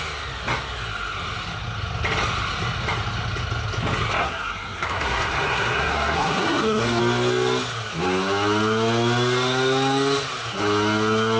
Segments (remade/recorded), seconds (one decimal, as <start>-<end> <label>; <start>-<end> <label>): 0.0-4.2 recorded; 4.2-7.0 remade; 7.0-11.4 recorded